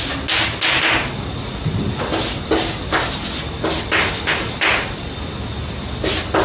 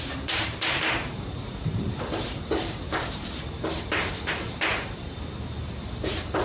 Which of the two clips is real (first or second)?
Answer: first